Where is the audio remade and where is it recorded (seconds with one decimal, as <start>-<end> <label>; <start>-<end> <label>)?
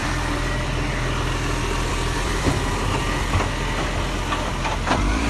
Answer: 0.0-2.7 remade; 2.7-4.6 recorded; 4.6-5.3 remade